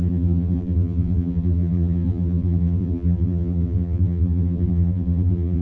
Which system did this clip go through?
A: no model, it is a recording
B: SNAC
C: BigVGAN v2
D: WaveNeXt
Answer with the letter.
C